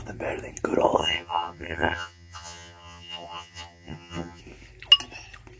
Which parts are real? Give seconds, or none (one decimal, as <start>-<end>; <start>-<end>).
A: 0.0-1.0; 4.4-5.6